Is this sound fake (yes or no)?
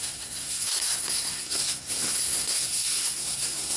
yes